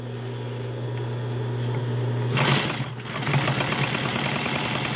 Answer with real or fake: real